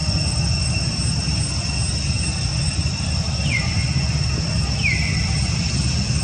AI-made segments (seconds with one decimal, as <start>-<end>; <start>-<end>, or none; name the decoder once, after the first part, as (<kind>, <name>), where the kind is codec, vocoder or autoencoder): 0.0-0.7 (vocoder, Vocos); 2.5-4.3